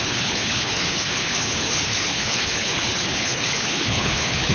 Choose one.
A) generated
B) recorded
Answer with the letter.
A